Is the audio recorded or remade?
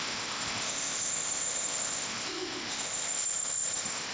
remade